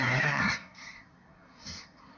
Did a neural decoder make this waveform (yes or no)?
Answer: yes